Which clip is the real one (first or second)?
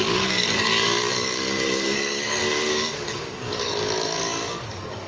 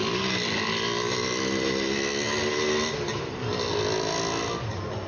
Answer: second